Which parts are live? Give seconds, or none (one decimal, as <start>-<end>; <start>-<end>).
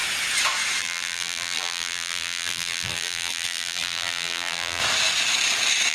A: 0.0-0.8; 4.8-5.9